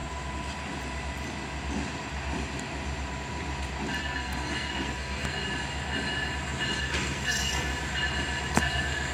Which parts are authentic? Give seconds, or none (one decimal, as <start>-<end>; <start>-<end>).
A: 0.0-4.0; 5.4-6.8; 7.7-8.5